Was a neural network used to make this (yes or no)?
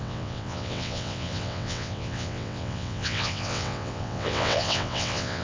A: yes